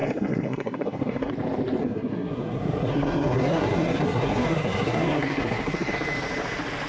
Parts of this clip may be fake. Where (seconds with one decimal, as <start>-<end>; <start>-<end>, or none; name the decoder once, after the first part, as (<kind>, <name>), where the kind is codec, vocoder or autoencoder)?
0.0-1.3 (codec, SNAC); 1.8-5.9